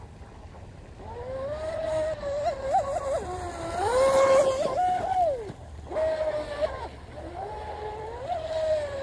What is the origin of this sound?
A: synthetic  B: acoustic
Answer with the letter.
B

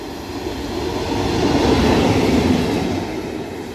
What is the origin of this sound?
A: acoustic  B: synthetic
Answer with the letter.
A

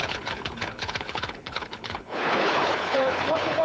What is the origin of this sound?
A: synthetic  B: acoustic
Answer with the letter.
A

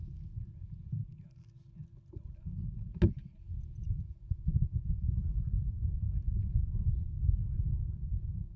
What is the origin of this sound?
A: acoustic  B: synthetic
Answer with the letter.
A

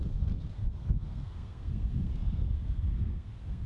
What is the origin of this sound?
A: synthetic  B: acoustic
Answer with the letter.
A